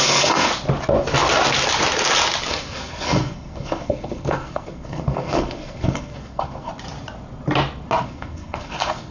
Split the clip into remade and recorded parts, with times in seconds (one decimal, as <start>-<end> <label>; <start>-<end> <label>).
0.0-0.5 remade; 0.5-2.5 recorded; 2.5-6.7 remade; 6.7-8.0 recorded; 8.0-9.1 remade